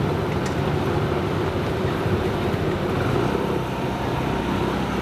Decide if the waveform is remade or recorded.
recorded